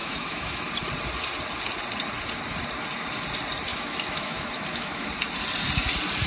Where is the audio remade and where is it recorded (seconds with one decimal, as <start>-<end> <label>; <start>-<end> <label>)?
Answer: 0.0-0.6 remade; 0.6-3.7 recorded; 3.7-5.1 remade; 5.1-6.3 recorded